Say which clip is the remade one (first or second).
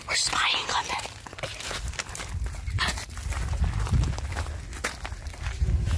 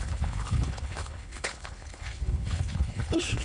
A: second